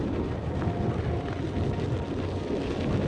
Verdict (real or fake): real